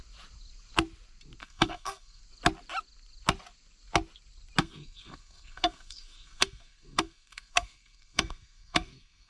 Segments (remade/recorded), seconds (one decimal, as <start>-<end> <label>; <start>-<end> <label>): 0.0-1.4 recorded; 1.4-2.2 remade; 2.2-4.6 recorded; 4.6-9.3 remade